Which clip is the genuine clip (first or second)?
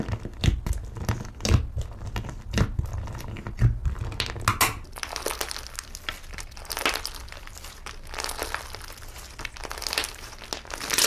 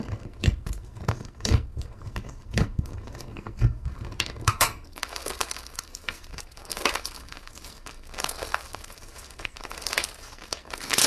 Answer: first